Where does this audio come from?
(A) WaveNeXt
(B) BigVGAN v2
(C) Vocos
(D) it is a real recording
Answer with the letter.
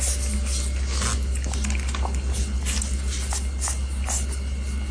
D